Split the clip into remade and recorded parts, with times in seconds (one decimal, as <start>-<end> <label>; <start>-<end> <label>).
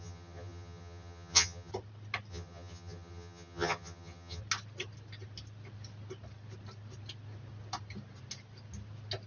0.0-1.7 remade; 1.7-2.3 recorded; 2.3-4.4 remade; 4.4-9.3 recorded